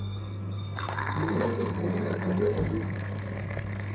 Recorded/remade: remade